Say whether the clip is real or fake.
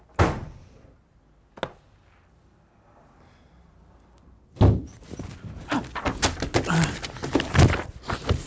real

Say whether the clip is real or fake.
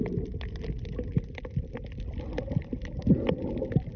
real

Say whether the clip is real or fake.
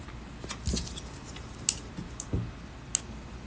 real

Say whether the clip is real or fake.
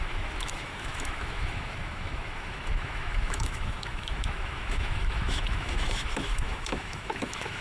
fake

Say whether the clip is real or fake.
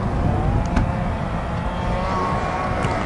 real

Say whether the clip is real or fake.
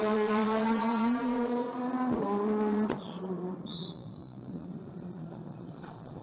fake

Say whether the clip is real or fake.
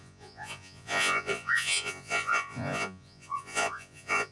fake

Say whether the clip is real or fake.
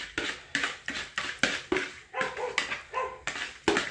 real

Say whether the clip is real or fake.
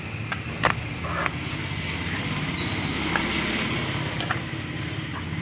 real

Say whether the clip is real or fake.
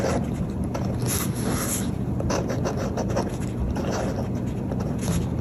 real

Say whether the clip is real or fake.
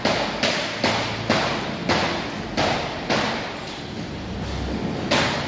real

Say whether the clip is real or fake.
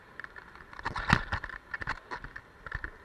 real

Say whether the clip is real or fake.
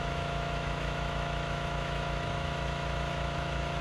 fake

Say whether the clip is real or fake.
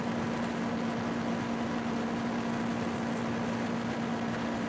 real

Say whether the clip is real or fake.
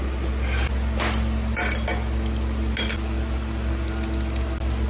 real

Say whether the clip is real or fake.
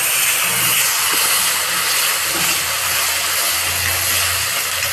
real